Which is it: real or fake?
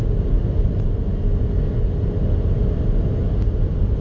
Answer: real